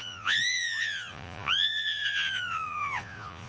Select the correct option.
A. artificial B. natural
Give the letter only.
A